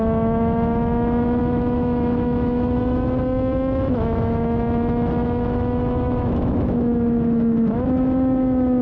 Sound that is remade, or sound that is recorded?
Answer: remade